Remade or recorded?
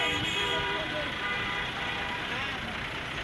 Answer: remade